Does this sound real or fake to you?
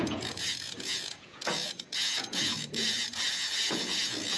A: fake